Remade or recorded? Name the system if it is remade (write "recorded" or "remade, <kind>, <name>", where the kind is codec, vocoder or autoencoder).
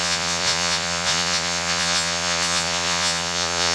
remade, vocoder, Vocos